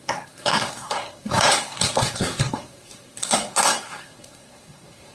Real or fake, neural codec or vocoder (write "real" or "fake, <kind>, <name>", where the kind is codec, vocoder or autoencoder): fake, codec, SNAC